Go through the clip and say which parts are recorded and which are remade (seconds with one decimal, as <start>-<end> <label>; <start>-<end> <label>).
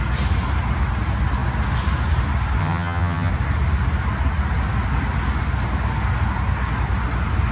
0.0-2.6 recorded; 2.6-3.3 remade; 3.3-7.5 recorded